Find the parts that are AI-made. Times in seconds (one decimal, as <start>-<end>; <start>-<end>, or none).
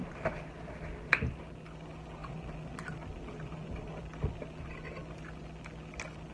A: none